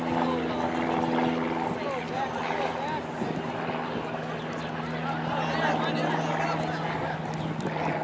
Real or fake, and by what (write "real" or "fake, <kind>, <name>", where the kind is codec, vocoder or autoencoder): real